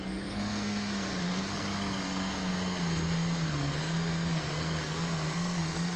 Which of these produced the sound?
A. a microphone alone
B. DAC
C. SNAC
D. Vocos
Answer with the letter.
C